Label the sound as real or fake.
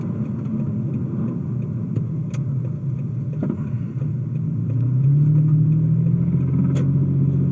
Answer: real